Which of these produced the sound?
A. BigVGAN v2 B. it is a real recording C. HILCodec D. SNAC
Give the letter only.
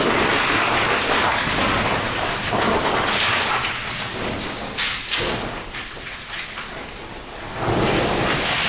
B